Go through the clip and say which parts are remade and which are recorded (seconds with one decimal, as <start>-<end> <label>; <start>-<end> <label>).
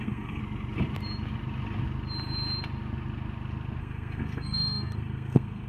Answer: 0.0-0.4 remade; 0.4-3.8 recorded; 3.8-5.7 remade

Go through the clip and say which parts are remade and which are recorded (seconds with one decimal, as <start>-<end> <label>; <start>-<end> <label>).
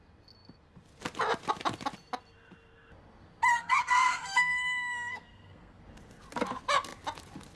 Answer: 0.0-3.5 recorded; 3.5-5.8 remade; 5.8-7.6 recorded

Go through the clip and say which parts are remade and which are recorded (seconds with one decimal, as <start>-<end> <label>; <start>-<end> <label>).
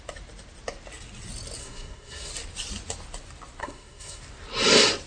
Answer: 0.0-1.6 recorded; 1.6-2.3 remade; 2.3-3.6 recorded; 3.6-4.2 remade; 4.2-5.1 recorded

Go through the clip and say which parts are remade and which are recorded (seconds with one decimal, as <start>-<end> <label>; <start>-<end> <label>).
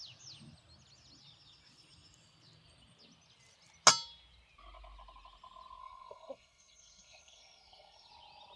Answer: 0.0-5.8 recorded; 5.8-8.1 remade; 8.1-8.6 recorded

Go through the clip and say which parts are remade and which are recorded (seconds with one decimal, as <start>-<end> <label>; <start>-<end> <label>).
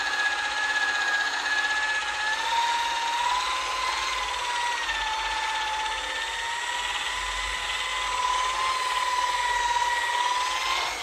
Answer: 0.0-11.0 recorded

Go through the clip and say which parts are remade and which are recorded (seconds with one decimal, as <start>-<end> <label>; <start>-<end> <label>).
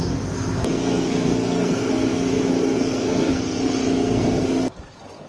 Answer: 0.0-5.3 remade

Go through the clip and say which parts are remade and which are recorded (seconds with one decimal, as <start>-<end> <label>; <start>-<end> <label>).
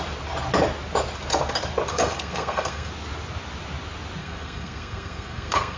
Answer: 0.0-1.9 recorded; 1.9-2.9 remade; 2.9-4.2 recorded; 4.2-5.8 remade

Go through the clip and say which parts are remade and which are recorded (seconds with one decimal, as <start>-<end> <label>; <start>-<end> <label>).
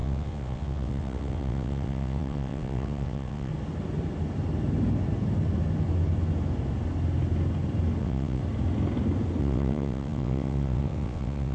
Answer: 0.0-3.5 remade; 3.5-8.0 recorded; 8.0-8.4 remade; 8.4-9.4 recorded; 9.4-11.5 remade